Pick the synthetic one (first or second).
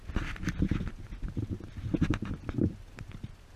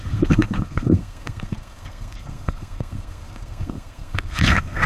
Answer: second